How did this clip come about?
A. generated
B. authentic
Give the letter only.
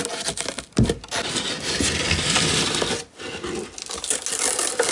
B